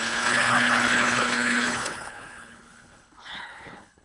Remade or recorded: remade